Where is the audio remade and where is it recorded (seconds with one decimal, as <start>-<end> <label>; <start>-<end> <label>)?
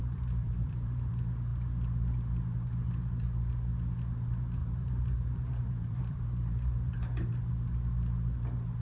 0.0-1.1 remade; 1.1-4.6 recorded; 4.6-7.5 remade; 7.5-8.8 recorded